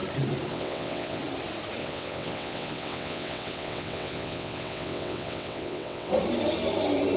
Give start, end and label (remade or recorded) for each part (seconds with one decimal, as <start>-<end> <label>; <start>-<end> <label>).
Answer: 0.0-0.5 recorded; 0.5-1.2 remade; 1.2-1.8 recorded; 1.8-6.1 remade; 6.1-7.2 recorded